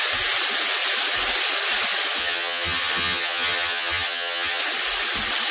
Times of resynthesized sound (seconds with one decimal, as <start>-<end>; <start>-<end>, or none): 2.2-4.6